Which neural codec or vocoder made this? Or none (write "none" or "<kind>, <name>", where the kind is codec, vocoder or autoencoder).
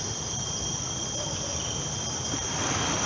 none